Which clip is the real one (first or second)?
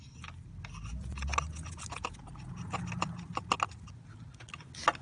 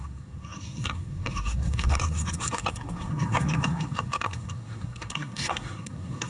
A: first